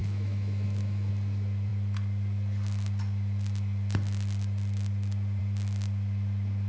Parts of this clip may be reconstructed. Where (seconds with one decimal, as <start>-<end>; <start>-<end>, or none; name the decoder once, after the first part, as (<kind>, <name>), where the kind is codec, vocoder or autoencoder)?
0.0-1.1 (autoencoder, DAC-VAE)